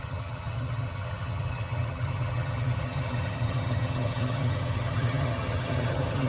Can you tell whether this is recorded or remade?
remade